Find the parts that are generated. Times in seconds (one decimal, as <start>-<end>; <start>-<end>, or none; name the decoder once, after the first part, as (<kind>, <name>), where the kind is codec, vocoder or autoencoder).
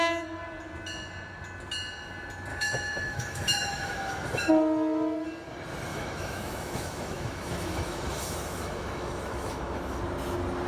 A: 2.5-4.5 (autoencoder, DAC-VAE); 5.9-10.0